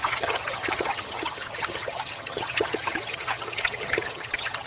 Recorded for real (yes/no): no